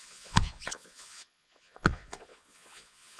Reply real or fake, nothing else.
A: fake